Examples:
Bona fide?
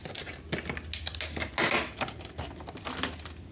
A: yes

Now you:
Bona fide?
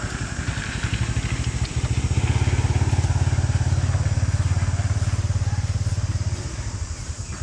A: yes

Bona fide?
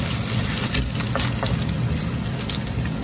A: yes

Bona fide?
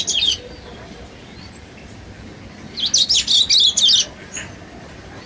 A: yes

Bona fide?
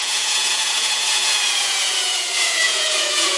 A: no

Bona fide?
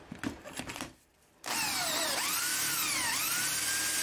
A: no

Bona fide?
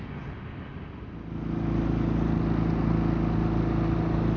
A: yes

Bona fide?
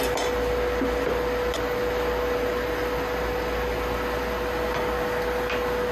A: yes